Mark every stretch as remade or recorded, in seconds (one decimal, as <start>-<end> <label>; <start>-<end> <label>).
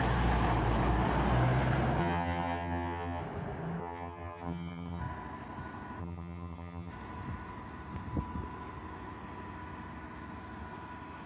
0.0-2.0 recorded; 2.0-3.2 remade; 3.2-3.8 recorded; 3.8-5.0 remade; 5.0-6.0 recorded; 6.0-6.9 remade; 6.9-11.3 recorded